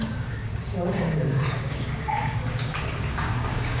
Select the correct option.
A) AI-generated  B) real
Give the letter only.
A